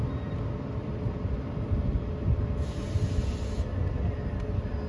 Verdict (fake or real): real